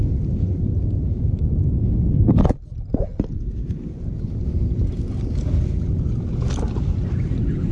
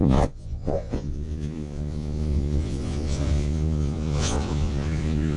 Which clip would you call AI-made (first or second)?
second